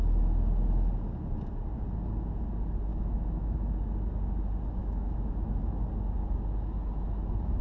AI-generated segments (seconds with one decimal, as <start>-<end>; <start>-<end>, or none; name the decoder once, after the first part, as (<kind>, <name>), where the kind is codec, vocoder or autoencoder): 2.9-3.7 (autoencoder, DAC-VAE); 4.8-5.6